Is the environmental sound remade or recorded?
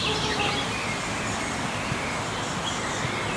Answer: recorded